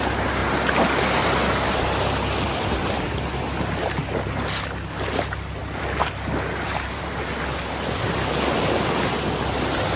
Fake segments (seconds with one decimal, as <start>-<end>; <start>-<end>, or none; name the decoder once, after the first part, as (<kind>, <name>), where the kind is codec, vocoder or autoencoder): none